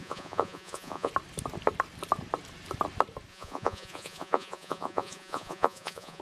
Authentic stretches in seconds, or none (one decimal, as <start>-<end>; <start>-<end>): 1.1-3.3